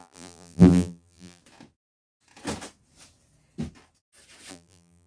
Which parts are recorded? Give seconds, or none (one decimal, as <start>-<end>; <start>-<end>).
1.4-4.5